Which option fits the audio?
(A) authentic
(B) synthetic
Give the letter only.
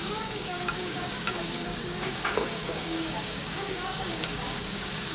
B